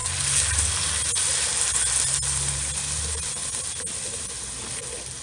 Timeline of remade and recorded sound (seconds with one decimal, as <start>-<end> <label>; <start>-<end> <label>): 0.0-5.2 recorded